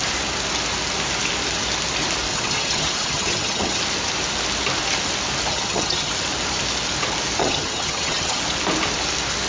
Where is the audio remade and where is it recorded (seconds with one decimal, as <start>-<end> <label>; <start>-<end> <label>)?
0.0-2.3 recorded; 2.3-3.8 remade; 3.8-5.5 recorded; 5.5-6.1 remade; 6.1-7.4 recorded; 7.4-8.4 remade; 8.4-9.5 recorded